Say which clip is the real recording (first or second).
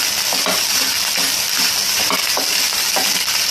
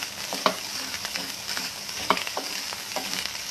first